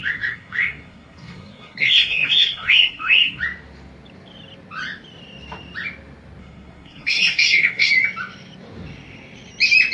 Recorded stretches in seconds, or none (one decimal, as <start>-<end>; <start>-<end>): 3.4-6.4; 7.9-9.9